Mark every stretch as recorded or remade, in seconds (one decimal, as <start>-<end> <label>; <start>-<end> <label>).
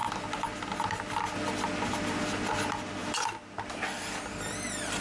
0.0-5.0 recorded